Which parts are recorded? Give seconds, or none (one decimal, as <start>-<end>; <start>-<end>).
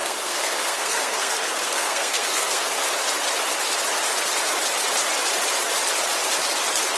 2.8-7.0